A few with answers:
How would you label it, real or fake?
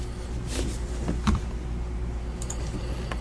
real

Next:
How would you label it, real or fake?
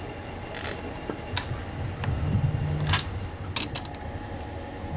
real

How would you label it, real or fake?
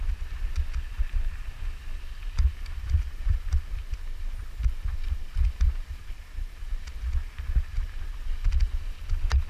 real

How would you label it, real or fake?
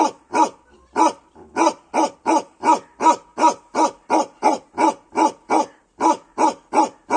real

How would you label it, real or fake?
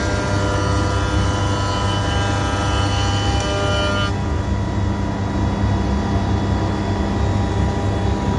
real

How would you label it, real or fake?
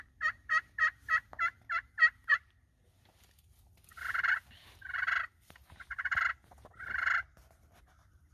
real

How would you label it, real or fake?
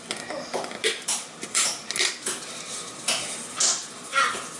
real